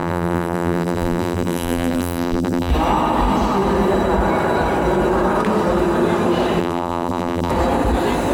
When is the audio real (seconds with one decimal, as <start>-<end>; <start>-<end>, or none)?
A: 2.7-6.6; 7.5-8.3